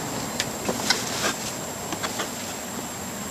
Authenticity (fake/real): fake